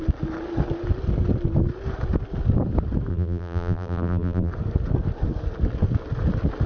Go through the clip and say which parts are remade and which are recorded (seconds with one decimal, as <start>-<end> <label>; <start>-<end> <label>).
0.0-3.1 recorded; 3.1-4.5 remade; 4.5-6.7 recorded